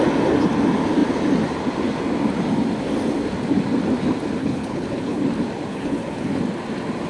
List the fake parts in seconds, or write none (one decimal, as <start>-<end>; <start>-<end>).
4.4-5.2; 5.7-6.4